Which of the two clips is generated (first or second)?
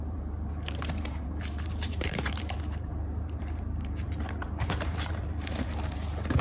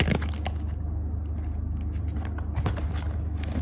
first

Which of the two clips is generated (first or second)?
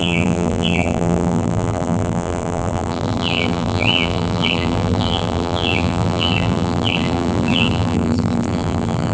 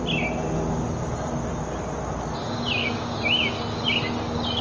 first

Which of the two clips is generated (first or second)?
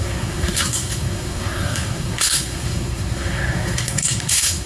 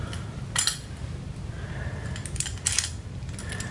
first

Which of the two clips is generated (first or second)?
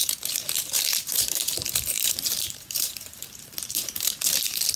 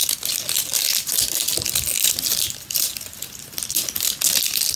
first